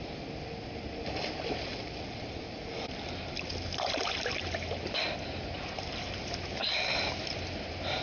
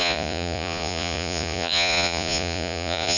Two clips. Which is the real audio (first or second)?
first